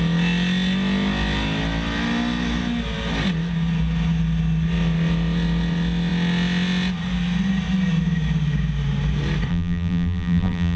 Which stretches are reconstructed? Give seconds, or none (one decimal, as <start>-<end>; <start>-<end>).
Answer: 9.5-10.8